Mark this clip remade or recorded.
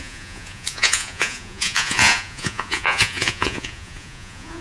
remade